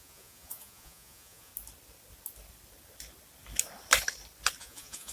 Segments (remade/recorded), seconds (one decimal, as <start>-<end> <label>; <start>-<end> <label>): 0.0-1.5 remade; 1.5-4.6 recorded; 4.6-5.1 remade